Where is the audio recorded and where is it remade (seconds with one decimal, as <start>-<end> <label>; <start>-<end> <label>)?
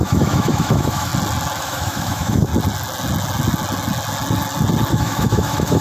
0.0-1.1 remade; 1.1-1.6 recorded; 1.6-2.5 remade; 2.5-4.9 recorded; 4.9-5.8 remade